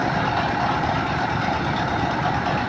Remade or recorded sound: recorded